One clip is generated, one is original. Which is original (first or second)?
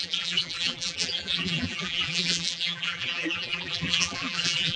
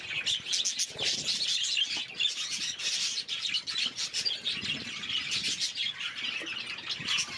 second